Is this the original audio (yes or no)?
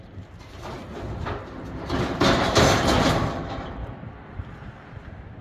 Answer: yes